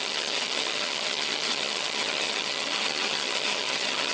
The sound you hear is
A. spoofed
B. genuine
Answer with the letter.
A